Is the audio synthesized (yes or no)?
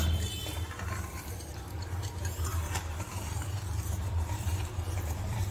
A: yes